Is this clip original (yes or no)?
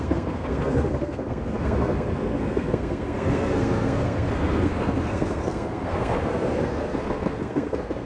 no